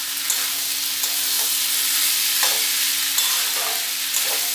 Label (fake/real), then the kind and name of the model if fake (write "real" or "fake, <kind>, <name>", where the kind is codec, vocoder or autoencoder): real